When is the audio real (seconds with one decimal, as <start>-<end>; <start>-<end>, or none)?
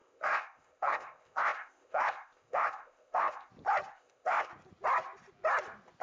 3.5-3.9; 4.5-6.0